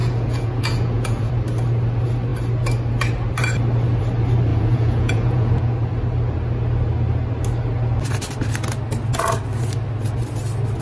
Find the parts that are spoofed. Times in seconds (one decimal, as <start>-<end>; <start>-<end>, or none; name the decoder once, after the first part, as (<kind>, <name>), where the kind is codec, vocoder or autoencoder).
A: 0.0-1.3 (vocoder, Vocos); 4.5-5.7